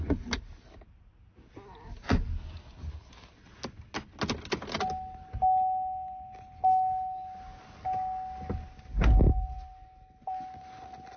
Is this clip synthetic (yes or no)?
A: no